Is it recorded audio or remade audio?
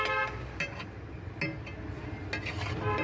recorded